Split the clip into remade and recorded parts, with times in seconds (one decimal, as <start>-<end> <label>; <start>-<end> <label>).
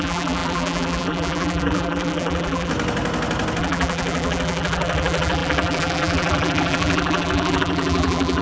0.0-2.7 remade; 2.7-3.6 recorded; 3.6-8.4 remade